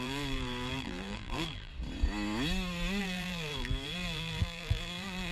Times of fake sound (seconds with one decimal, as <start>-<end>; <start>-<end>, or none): 0.0-1.7; 3.0-5.3